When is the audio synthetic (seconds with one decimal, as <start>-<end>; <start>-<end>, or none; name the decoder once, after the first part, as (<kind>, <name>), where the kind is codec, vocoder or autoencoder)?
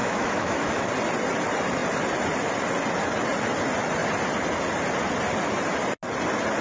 0.0-0.9 (autoencoder, DAC-VAE)